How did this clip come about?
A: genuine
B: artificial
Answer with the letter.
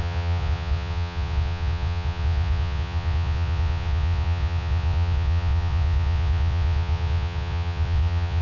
B